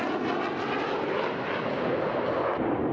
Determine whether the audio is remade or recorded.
recorded